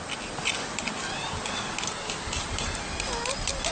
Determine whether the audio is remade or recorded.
recorded